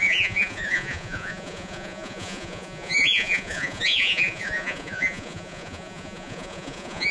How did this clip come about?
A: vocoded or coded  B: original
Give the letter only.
A